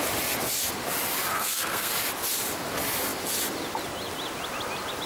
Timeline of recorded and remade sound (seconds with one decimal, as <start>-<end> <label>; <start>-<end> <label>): 0.0-1.3 recorded; 1.3-1.9 remade; 1.9-5.1 recorded